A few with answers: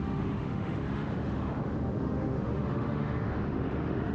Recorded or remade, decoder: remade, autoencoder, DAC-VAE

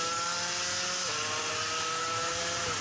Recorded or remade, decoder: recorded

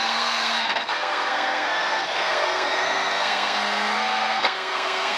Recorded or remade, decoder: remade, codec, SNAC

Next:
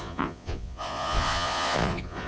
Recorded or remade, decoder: remade, vocoder, Vocos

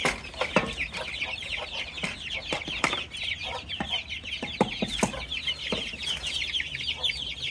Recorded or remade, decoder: recorded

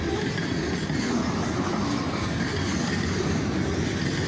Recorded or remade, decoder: recorded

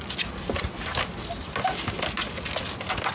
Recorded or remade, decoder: recorded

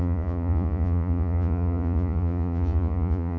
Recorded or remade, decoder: remade, vocoder, Vocos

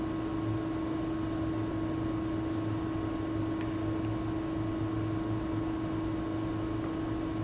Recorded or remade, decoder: recorded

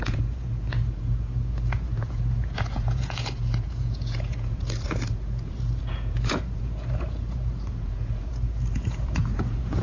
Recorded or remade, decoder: remade, vocoder, Vocos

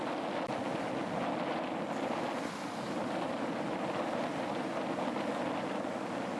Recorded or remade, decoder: recorded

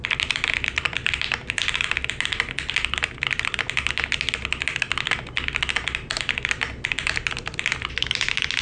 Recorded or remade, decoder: recorded